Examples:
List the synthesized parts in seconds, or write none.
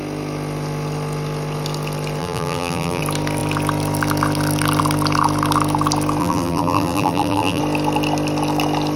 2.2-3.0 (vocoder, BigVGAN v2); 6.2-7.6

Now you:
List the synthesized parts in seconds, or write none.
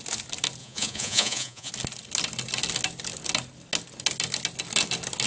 0.6-1.7 (vocoder, Vocos)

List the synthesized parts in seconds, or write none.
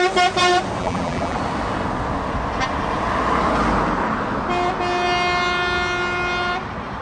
0.8-1.4 (vocoder, BigVGAN v2)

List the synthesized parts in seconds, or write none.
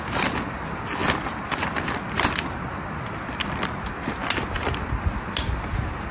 none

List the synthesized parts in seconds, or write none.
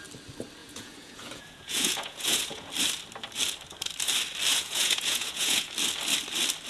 0.6-2.7 (vocoder, Vocos); 4.5-5.7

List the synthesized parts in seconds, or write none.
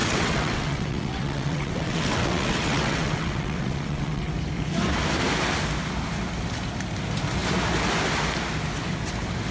0.0-4.3 (vocoder, WaveNeXt)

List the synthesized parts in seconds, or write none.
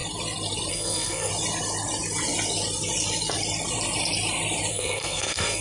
0.7-1.3 (codec, SNAC); 4.7-5.6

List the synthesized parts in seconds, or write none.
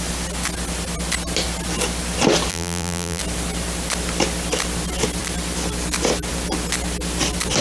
2.5-3.2 (vocoder, BigVGAN v2)